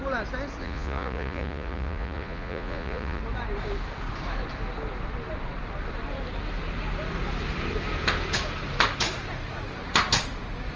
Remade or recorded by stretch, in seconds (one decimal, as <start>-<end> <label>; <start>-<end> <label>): 0.0-0.6 recorded; 0.6-3.2 remade; 3.2-10.8 recorded